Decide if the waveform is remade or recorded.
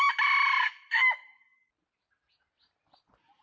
recorded